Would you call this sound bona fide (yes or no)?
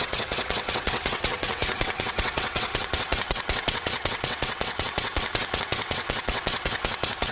no